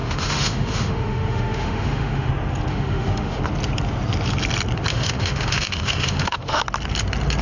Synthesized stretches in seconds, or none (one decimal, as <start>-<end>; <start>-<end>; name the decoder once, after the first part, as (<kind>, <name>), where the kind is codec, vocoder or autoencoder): 0.0-2.3 (autoencoder, DAC-VAE); 2.7-3.4; 4.9-6.6